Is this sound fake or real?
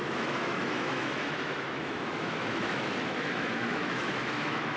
fake